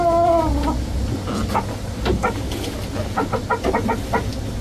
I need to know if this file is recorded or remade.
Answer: recorded